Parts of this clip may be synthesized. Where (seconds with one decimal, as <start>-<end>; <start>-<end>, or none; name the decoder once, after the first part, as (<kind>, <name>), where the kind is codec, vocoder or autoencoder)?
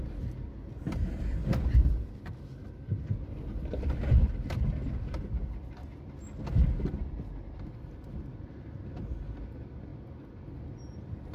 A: none